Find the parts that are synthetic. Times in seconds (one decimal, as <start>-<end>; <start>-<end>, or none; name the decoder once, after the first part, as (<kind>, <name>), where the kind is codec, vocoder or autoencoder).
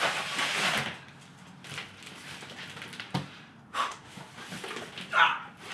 3.7-4.3 (autoencoder, DAC-VAE)